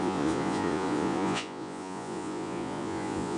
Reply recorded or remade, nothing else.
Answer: remade